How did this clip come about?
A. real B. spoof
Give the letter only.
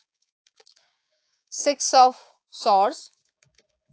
B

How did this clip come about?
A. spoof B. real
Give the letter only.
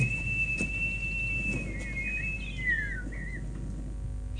B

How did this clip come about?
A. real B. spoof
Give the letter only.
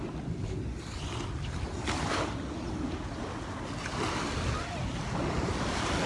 A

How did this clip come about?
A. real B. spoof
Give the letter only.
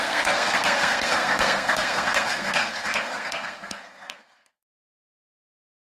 B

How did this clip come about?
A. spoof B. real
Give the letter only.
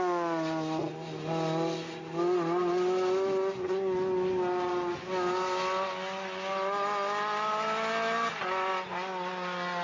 B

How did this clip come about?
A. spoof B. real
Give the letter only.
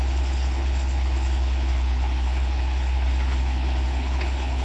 A